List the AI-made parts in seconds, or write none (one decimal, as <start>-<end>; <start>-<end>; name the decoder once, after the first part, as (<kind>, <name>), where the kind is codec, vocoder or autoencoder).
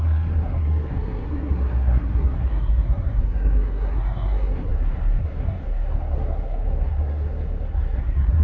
0.0-8.4 (codec, SNAC)